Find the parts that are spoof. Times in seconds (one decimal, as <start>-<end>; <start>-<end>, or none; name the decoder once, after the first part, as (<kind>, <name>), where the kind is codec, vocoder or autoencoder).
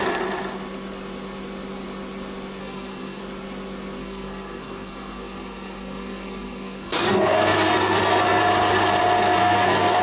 2.6-3.2 (codec, SNAC); 4.0-8.4; 9.4-10.0